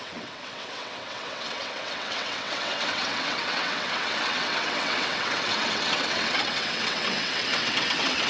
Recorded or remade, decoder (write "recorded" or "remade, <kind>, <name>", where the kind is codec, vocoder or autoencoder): remade, vocoder, WaveNeXt